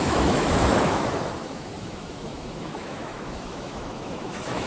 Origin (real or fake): fake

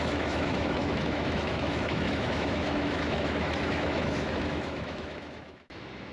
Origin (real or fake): fake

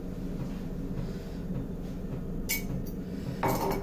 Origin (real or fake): real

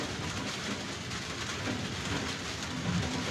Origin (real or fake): real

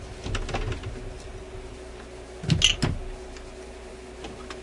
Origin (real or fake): real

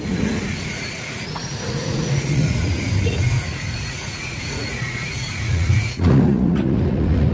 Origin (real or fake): fake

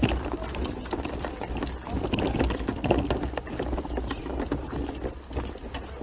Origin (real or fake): real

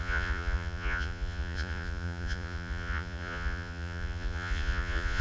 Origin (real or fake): fake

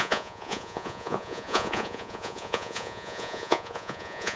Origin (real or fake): fake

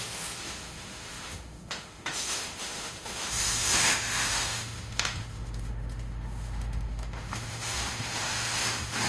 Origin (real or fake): fake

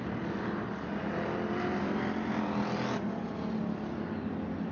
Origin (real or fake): real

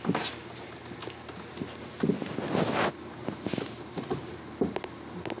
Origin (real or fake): real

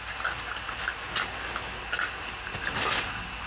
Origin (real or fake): real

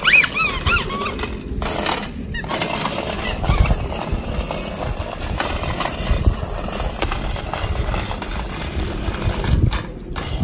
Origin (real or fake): real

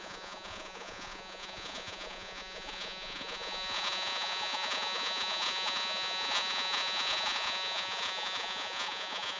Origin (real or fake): fake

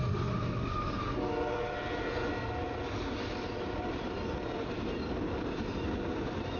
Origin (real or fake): real